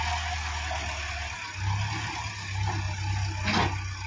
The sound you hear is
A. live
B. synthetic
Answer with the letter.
A